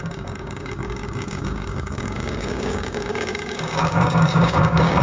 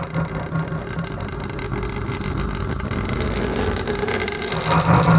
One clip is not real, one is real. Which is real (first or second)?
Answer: second